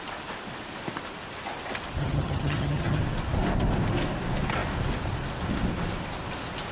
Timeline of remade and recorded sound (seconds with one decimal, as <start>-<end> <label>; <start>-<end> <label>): 0.0-2.0 recorded; 2.0-3.0 remade; 3.0-6.7 recorded